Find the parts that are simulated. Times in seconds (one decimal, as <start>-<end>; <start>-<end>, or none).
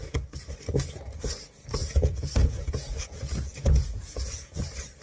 1.8-4.6